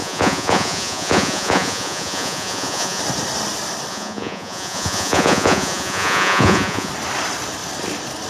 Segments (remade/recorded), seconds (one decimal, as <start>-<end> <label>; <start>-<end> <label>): 0.0-3.0 remade; 3.0-3.9 recorded; 3.9-6.9 remade; 6.9-8.3 recorded